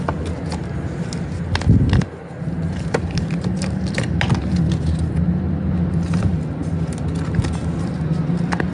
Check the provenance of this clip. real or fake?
real